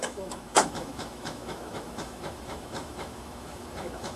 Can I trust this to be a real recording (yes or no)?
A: no